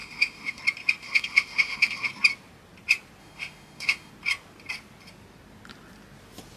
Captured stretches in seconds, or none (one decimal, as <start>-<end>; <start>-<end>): 0.6-1.0; 2.1-3.2; 4.1-6.6